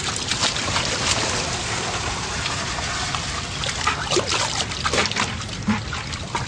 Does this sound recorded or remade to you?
remade